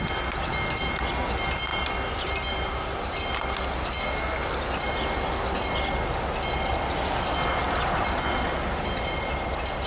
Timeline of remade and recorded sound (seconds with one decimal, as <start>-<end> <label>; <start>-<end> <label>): 0.0-1.7 recorded; 1.7-3.2 remade; 3.2-9.9 recorded